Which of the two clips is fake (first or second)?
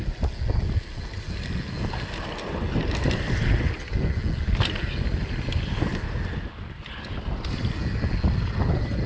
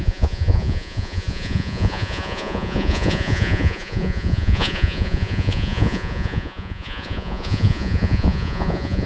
second